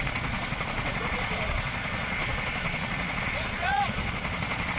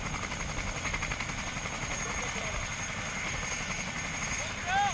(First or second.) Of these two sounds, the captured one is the second